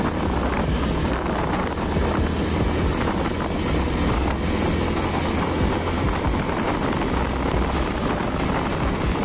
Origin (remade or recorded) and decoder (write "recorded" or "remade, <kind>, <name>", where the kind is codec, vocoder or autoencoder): recorded